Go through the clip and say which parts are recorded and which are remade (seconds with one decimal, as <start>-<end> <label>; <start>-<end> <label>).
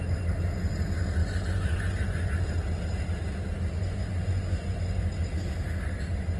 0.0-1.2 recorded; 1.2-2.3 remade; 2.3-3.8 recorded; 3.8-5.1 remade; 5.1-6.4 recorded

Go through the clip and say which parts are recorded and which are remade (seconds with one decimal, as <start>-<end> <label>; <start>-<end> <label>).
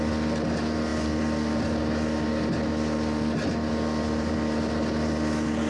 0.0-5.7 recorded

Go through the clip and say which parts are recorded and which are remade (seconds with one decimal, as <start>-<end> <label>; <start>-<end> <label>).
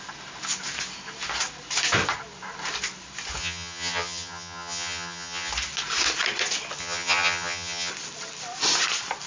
0.0-3.4 recorded; 3.4-5.5 remade; 5.5-6.8 recorded; 6.8-7.9 remade; 7.9-9.3 recorded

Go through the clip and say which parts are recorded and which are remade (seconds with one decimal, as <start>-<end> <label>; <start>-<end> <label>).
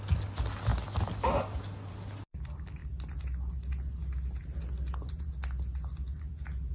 0.0-6.7 recorded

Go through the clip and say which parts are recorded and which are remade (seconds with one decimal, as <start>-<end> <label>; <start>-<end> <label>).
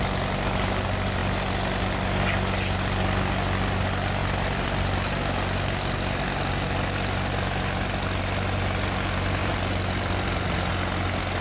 0.0-4.2 recorded; 4.2-5.1 remade; 5.1-9.4 recorded; 9.4-10.7 remade; 10.7-11.4 recorded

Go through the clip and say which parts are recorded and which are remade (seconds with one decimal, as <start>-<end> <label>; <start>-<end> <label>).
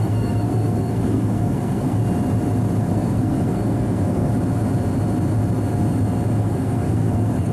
0.0-2.0 remade; 2.0-2.8 recorded; 2.8-4.3 remade; 4.3-6.4 recorded; 6.4-7.5 remade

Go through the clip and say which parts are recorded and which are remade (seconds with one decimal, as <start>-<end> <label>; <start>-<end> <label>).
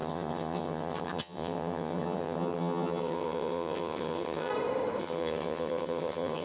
0.0-4.5 remade; 4.5-5.0 recorded; 5.0-6.4 remade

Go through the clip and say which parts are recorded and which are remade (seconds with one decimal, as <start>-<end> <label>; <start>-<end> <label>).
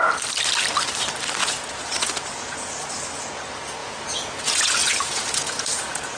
0.0-1.4 recorded; 1.4-2.7 remade; 2.7-3.8 recorded; 3.8-6.2 remade